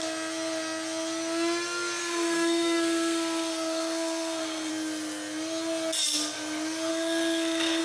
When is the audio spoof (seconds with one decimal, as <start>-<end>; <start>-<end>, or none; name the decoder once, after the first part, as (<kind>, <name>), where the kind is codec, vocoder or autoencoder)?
2.0-4.7 (codec, SNAC); 6.9-7.8